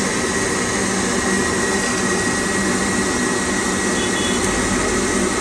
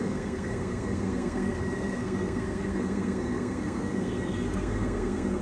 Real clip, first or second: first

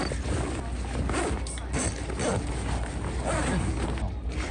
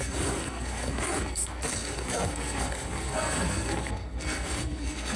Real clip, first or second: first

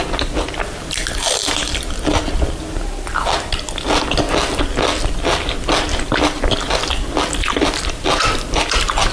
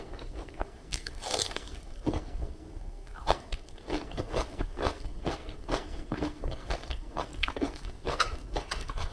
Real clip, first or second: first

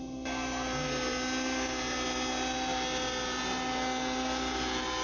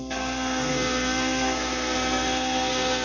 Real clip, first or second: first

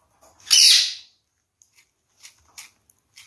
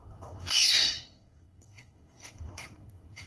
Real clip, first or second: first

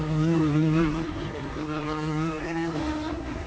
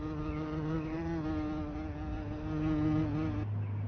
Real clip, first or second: second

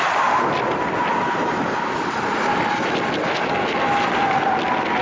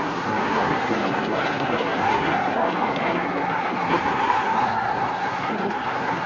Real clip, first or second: first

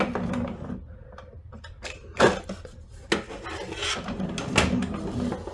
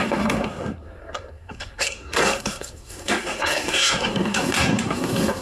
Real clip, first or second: first